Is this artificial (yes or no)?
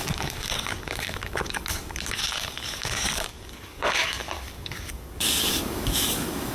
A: yes